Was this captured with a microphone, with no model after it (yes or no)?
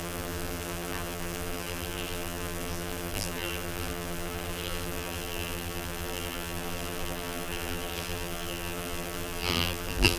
no